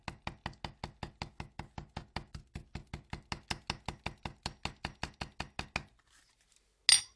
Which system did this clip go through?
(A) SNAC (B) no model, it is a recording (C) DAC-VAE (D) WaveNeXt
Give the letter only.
B